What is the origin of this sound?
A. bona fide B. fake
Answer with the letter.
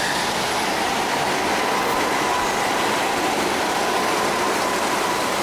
A